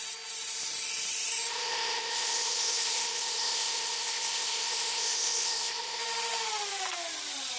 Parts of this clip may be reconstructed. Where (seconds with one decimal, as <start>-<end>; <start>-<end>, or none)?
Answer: 1.5-6.0